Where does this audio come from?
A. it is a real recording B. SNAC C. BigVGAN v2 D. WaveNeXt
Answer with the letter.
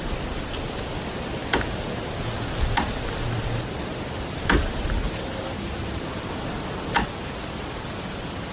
A